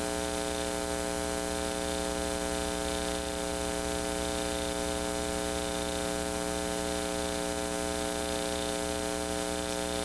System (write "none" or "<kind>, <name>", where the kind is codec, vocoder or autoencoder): none